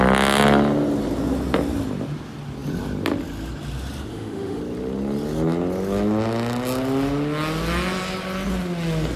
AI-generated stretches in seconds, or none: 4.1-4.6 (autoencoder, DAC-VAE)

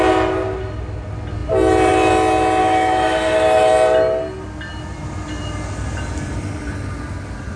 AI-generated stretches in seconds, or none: 2.6-3.7 (autoencoder, DAC-VAE)

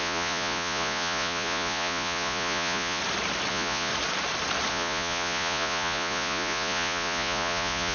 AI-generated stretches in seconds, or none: 0.0-3.0 (vocoder, Vocos); 3.5-3.9; 4.7-7.9

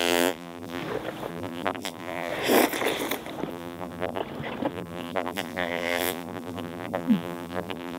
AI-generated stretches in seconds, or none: 0.0-0.8 (vocoder, BigVGAN v2); 1.3-2.3; 3.5-4.2; 4.7-8.0

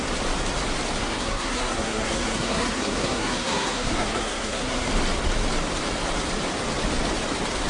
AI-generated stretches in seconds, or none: 1.0-4.9 (codec, SNAC)

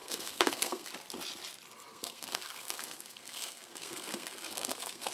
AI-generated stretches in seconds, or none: 0.0-0.9 (codec, SNAC); 1.9-5.1

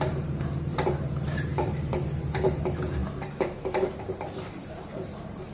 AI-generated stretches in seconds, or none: 0.0-5.5 (vocoder, BigVGAN v2)

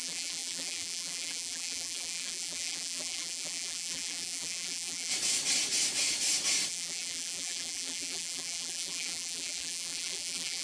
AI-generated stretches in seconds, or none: 0.0-5.1 (vocoder, BigVGAN v2); 6.7-10.6